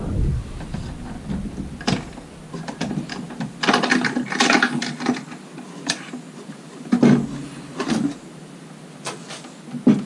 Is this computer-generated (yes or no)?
no